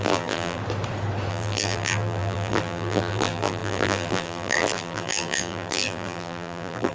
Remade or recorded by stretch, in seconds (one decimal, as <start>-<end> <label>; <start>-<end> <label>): 0.0-0.6 remade; 0.6-1.3 recorded; 1.3-6.9 remade